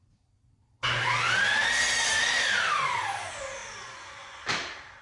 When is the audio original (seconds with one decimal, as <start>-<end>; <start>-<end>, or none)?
0.0-3.6; 4.4-5.0